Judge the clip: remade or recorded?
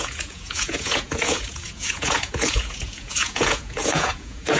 remade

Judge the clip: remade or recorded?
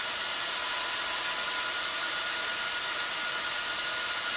recorded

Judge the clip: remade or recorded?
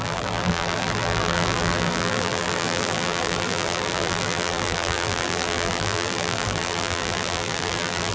remade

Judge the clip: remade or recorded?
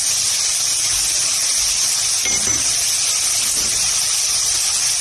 recorded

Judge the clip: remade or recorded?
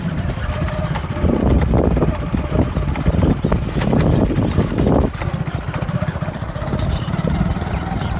recorded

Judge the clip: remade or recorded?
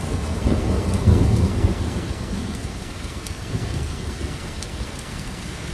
remade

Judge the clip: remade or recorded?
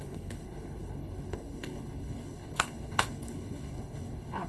remade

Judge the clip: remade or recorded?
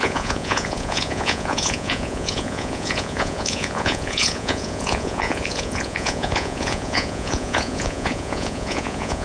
remade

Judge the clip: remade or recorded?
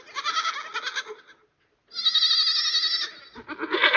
recorded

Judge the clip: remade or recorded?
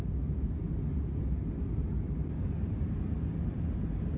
recorded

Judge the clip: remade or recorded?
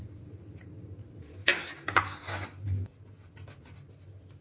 recorded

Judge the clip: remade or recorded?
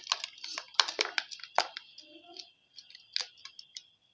recorded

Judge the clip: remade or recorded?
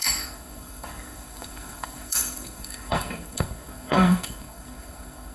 remade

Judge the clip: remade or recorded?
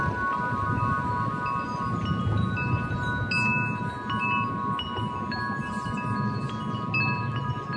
recorded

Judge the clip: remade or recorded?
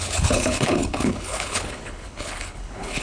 remade